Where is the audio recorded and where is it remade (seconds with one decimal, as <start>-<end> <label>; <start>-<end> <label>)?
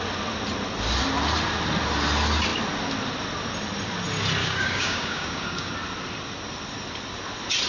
0.0-4.4 recorded; 4.4-5.7 remade; 5.7-7.7 recorded